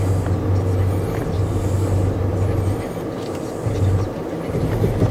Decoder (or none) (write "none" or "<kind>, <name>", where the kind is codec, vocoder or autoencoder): none